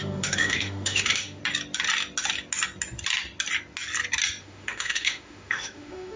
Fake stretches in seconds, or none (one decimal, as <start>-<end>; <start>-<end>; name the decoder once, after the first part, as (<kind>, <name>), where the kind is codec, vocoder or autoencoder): 0.0-1.4 (autoencoder, DAC-VAE); 4.4-6.2